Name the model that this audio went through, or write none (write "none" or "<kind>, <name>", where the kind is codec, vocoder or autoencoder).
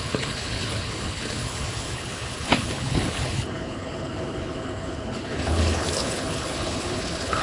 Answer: codec, HILCodec